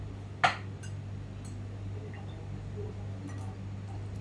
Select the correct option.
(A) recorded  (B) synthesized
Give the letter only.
A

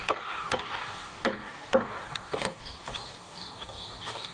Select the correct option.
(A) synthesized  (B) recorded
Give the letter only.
A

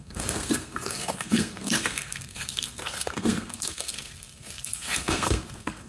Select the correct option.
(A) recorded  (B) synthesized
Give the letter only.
B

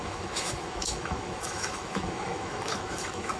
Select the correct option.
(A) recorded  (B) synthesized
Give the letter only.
B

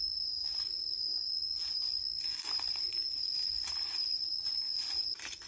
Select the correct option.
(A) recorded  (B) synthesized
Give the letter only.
B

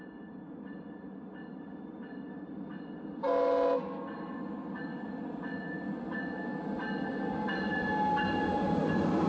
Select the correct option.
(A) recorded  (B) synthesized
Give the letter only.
A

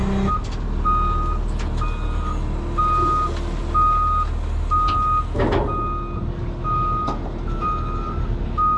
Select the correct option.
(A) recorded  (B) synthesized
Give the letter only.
A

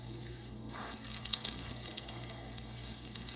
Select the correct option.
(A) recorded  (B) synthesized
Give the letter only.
B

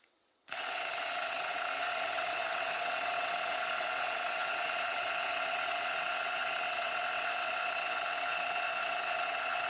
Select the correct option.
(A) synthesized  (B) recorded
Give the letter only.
A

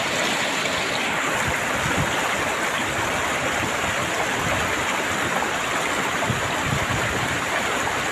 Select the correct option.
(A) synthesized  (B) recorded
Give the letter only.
B